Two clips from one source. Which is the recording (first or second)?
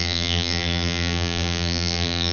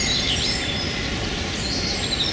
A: second